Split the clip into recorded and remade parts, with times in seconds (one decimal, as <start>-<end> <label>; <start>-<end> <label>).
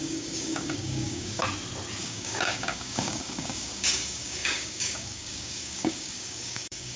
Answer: 0.0-1.4 remade; 1.4-2.0 recorded; 2.0-7.0 remade